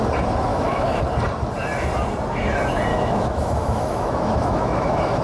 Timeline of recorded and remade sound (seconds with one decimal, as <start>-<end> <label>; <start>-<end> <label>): 0.0-0.5 recorded; 0.5-1.0 remade; 1.0-2.9 recorded; 2.9-5.2 remade